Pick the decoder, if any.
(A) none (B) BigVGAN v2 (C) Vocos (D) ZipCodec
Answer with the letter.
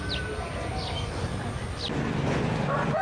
A